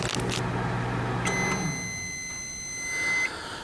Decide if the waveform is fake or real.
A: real